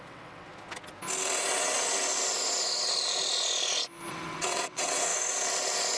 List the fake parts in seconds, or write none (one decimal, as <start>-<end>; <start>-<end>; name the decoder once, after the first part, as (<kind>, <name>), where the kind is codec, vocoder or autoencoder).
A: 0.0-0.5 (vocoder, WaveNeXt); 4.1-5.1